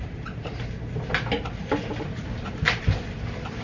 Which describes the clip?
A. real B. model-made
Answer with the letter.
A